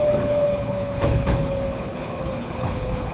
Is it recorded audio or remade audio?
remade